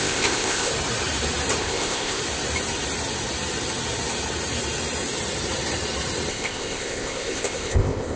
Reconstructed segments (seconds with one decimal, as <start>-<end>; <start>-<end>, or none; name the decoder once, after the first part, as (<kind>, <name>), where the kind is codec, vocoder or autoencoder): 0.0-0.7 (codec, ZipCodec); 1.6-2.2; 6.3-8.2